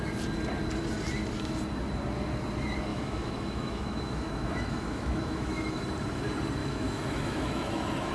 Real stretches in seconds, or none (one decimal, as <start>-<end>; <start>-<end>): 0.0-2.9; 5.8-6.6